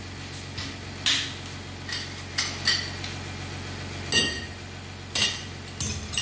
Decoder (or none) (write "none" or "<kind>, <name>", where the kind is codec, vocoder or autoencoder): none